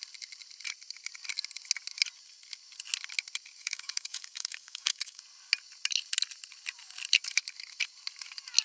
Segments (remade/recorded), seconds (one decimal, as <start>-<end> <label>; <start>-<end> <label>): 0.0-3.6 recorded; 3.6-5.2 remade; 5.2-8.6 recorded